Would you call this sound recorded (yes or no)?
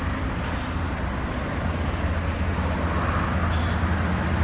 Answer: yes